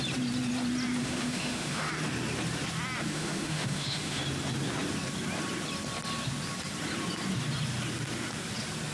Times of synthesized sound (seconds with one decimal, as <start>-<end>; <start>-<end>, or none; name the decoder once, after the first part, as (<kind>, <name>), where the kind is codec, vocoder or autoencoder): 1.0-1.9 (autoencoder, DAC-VAE); 3.1-4.2